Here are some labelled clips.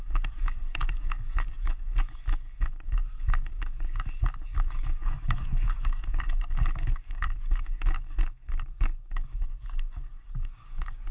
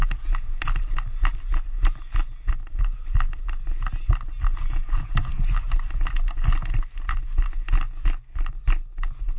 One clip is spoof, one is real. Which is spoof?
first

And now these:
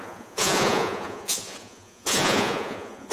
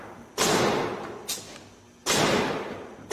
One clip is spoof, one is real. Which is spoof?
first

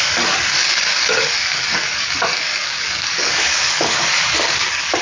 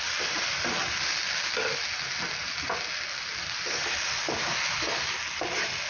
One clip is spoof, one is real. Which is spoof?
first